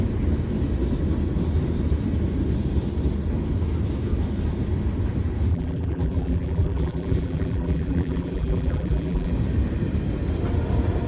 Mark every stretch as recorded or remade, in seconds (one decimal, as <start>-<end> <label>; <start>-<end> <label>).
0.0-5.5 recorded; 5.5-9.3 remade; 9.3-11.1 recorded